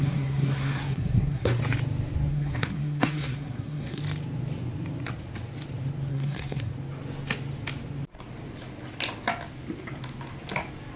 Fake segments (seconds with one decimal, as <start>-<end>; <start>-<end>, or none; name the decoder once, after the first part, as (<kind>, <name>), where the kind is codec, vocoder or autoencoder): 0.0-1.6 (codec, SNAC); 2.3-4.0; 6.1-6.7